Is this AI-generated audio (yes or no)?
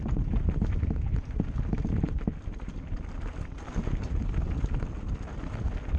no